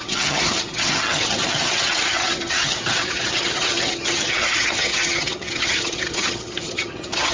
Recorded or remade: remade